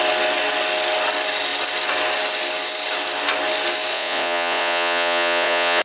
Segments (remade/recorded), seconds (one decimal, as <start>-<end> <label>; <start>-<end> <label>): 0.0-3.9 recorded; 3.9-5.8 remade